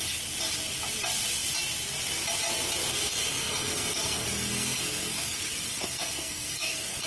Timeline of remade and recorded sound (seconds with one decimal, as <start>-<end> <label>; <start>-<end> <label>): 0.0-2.9 recorded; 2.9-7.1 remade